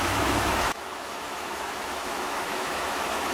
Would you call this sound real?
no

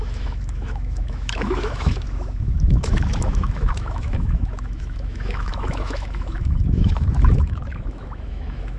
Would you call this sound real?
no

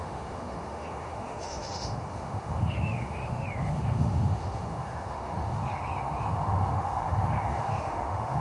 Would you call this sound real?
no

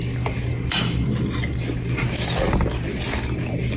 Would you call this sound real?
yes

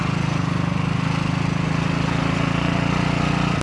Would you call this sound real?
yes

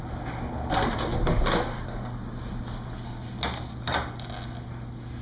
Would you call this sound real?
yes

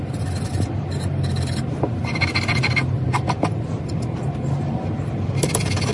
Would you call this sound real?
yes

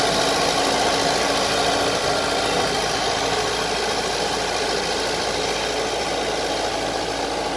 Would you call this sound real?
yes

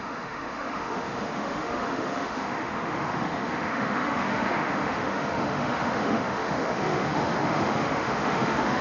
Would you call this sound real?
no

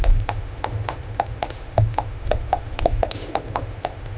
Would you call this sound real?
no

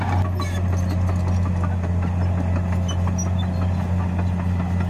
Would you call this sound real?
yes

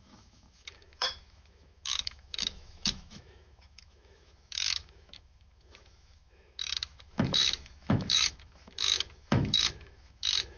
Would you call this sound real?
no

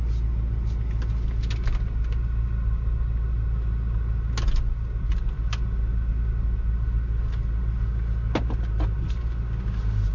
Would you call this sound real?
yes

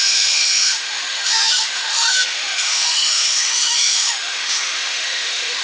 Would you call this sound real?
no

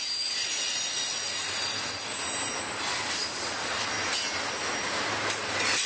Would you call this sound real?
yes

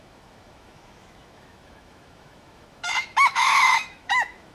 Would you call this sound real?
no